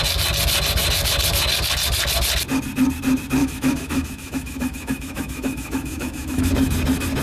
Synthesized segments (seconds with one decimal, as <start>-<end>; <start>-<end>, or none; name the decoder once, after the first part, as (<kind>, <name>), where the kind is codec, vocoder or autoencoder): 3.4-6.5 (autoencoder, DAC-VAE)